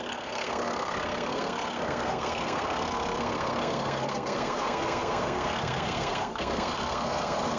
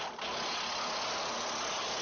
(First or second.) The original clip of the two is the second